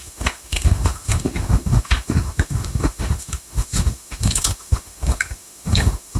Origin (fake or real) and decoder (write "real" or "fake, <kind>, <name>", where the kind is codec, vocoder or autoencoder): fake, autoencoder, DAC-VAE